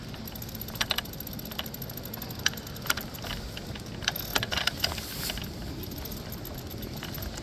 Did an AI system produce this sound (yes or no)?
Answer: no